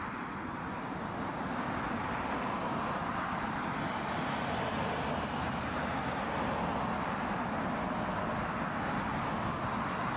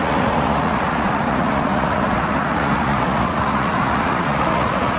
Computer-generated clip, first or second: second